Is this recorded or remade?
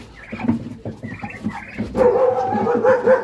recorded